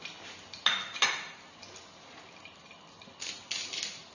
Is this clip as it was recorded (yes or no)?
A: yes